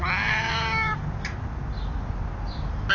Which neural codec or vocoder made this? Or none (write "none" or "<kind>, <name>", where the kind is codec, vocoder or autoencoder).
none